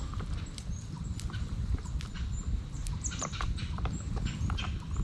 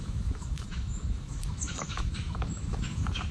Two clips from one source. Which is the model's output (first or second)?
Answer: second